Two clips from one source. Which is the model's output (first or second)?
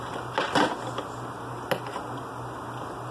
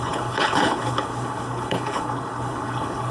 second